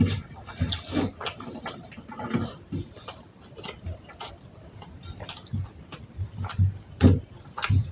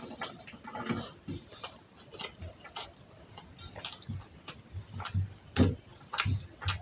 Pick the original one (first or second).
second